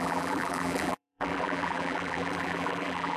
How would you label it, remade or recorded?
remade